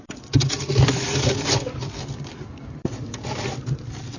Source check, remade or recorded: recorded